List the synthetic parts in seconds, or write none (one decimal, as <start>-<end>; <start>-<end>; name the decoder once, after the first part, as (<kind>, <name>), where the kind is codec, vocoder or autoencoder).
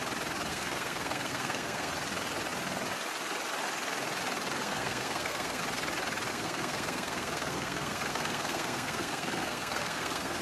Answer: 0.5-1.9 (codec, SNAC); 4.6-5.6; 6.3-10.4